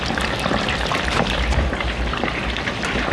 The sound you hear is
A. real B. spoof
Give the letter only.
A